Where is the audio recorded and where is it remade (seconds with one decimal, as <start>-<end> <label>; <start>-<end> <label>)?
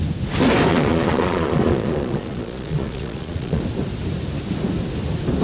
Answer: 0.0-0.7 recorded; 0.7-3.6 remade; 3.6-5.4 recorded